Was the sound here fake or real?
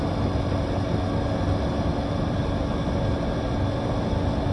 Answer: real